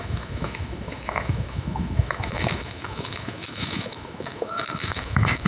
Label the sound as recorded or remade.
remade